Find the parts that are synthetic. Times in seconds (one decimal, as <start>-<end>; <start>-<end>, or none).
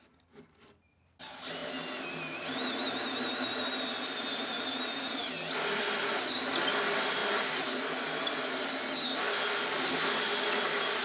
7.2-8.2